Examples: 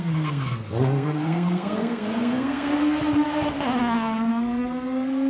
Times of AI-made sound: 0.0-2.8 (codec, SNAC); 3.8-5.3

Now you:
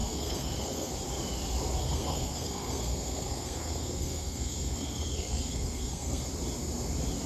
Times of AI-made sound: 0.0-0.9 (codec, SNAC); 1.8-6.2